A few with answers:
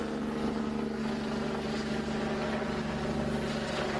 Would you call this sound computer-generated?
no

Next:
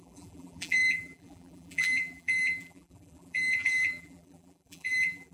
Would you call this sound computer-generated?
yes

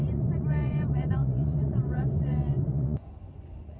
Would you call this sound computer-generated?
yes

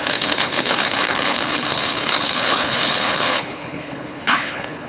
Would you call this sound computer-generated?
yes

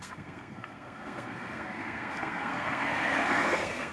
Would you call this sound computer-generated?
yes